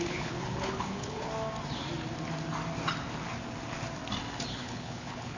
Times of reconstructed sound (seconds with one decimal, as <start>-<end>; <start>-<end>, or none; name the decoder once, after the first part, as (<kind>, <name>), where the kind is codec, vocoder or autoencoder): 0.0-1.3 (codec, HILCodec); 4.5-5.4